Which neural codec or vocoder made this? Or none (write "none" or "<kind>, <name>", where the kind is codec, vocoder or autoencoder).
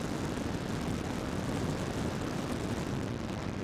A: none